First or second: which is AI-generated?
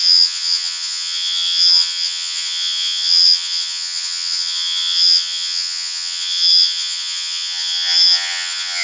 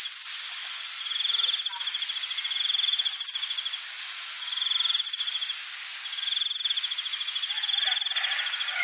first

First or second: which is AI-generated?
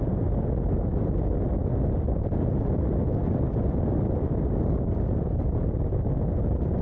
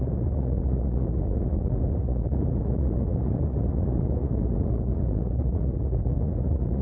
second